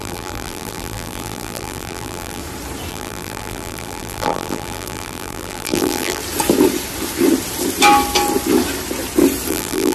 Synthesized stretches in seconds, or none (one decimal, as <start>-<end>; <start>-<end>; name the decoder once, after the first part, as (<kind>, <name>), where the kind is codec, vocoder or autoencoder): 0.0-2.4 (vocoder, BigVGAN v2); 2.9-6.2; 9.5-9.9